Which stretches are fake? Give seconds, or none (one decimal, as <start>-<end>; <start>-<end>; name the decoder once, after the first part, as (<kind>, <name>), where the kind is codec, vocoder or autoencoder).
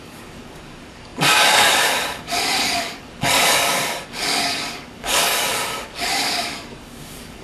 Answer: 0.0-7.4 (codec, DAC)